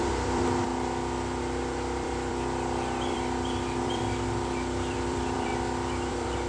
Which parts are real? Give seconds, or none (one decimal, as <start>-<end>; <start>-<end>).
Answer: 0.7-1.4; 5.5-6.1